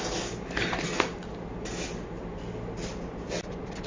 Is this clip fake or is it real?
real